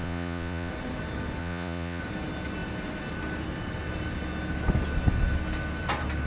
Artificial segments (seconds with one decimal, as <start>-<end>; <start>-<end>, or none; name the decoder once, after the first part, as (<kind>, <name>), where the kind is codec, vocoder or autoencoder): 0.0-0.7 (vocoder, Vocos); 1.4-2.0